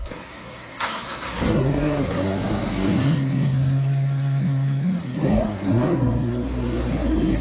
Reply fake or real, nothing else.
fake